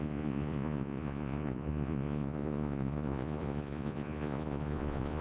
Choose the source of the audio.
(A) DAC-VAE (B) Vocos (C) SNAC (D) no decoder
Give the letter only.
B